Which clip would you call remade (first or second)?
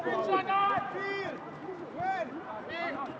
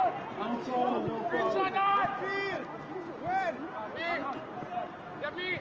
first